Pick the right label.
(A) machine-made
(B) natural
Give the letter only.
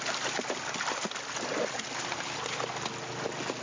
B